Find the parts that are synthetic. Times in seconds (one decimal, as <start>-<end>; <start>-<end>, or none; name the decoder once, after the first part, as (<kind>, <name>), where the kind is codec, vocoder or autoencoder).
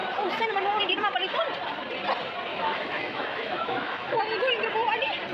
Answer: 2.5-4.2 (autoencoder, DAC-VAE)